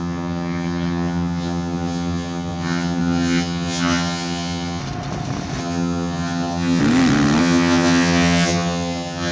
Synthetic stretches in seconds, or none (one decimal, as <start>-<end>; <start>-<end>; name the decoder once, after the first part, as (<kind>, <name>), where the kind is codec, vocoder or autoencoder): 0.0-4.8 (vocoder, HiFi-GAN); 5.6-6.8; 7.4-9.3

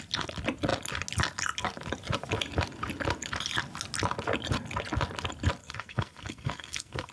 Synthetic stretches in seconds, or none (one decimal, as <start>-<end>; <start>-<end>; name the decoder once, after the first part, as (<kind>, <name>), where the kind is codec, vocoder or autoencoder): 5.6-7.1 (codec, SNAC)